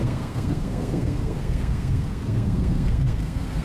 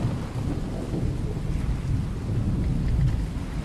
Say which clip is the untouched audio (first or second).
second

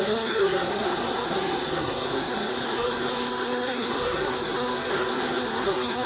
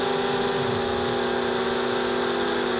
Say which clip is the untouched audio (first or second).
second